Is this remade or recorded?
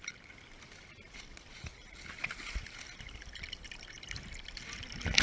recorded